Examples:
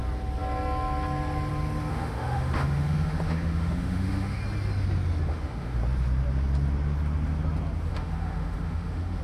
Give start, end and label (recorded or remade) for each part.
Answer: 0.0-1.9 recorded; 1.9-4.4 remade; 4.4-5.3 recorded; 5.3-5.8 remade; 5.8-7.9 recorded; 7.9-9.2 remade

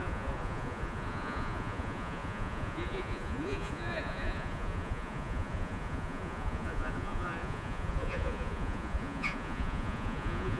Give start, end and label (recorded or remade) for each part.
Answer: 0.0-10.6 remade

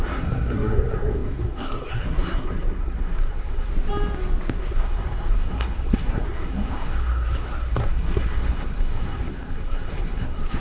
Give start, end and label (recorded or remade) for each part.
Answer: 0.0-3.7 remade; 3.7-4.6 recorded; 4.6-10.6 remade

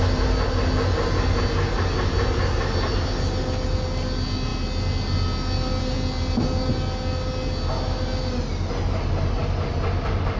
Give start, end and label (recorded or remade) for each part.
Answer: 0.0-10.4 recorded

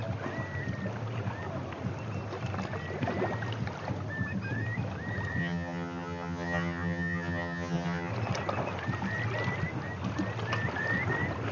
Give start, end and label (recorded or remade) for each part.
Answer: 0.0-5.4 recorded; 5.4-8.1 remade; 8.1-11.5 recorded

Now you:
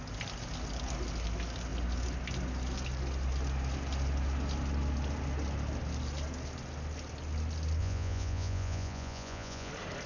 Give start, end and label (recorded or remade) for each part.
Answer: 0.0-7.8 recorded; 7.8-9.7 remade; 9.7-10.1 recorded